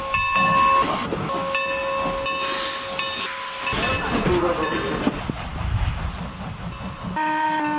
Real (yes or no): yes